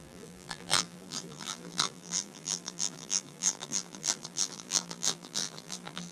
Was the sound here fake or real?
fake